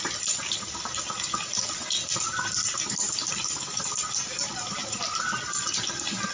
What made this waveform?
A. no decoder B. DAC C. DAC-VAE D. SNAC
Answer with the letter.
A